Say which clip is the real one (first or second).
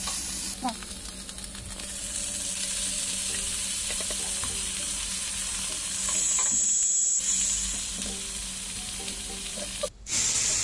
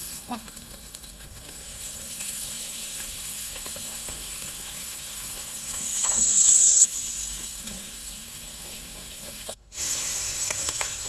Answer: first